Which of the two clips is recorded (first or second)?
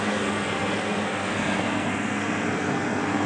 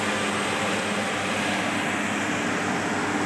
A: second